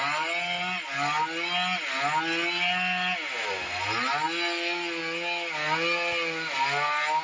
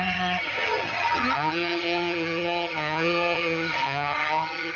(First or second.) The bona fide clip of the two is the first